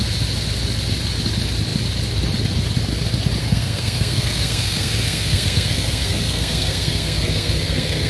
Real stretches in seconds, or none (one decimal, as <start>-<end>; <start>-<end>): 0.0-3.4